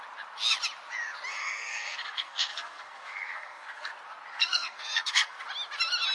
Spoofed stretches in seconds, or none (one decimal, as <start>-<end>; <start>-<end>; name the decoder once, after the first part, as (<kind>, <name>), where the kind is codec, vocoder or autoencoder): 1.4-3.9 (codec, SNAC); 4.3-5.4